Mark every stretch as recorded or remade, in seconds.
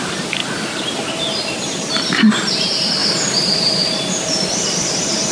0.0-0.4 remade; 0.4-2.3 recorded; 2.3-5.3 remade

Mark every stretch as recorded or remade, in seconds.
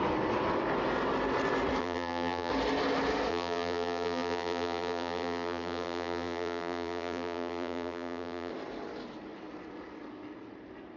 0.0-1.8 recorded; 1.8-2.5 remade; 2.5-3.3 recorded; 3.3-8.5 remade; 8.5-11.0 recorded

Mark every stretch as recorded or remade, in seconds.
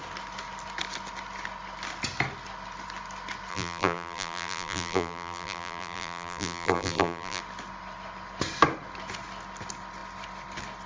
0.0-3.5 recorded; 3.5-7.4 remade; 7.4-10.9 recorded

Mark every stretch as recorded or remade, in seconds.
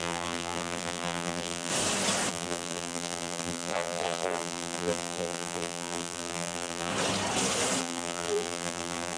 0.0-1.7 remade; 1.7-2.3 recorded; 2.3-6.9 remade; 6.9-7.8 recorded; 7.8-9.2 remade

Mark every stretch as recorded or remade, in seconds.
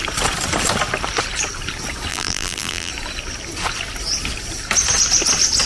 0.0-2.1 recorded; 2.1-2.9 remade; 2.9-5.7 recorded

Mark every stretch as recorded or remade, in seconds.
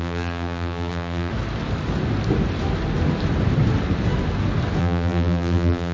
0.0-1.3 remade; 1.3-4.8 recorded; 4.8-5.9 remade